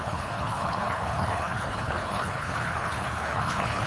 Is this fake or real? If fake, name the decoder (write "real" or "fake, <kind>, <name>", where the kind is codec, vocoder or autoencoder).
fake, codec, HILCodec